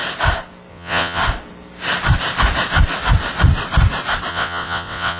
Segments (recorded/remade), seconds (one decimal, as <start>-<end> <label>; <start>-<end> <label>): 0.0-0.7 recorded; 0.7-1.2 remade; 1.2-4.3 recorded; 4.3-5.2 remade